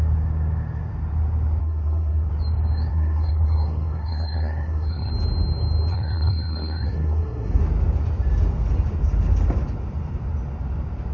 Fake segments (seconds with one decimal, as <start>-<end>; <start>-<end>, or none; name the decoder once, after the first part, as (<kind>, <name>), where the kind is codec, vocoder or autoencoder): 1.6-2.3 (codec, SNAC); 2.9-5.1; 5.9-7.6